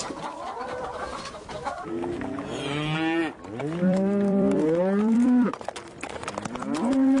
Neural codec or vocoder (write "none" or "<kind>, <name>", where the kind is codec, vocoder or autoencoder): vocoder, BigVGAN v2